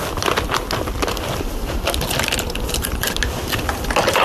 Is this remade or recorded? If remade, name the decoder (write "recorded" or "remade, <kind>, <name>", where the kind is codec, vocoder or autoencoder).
recorded